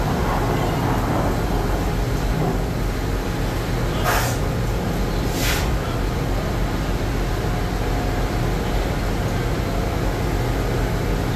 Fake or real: real